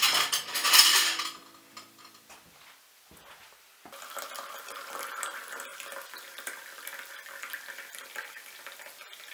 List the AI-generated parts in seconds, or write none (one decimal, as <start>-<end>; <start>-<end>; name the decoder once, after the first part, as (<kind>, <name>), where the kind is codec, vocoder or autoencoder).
none